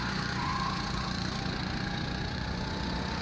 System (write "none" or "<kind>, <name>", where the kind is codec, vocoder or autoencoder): vocoder, Vocos